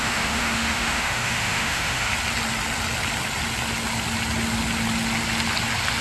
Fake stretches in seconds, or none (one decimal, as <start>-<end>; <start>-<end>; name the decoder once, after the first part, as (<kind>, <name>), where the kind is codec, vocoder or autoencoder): 0.0-2.1 (autoencoder, DAC-VAE)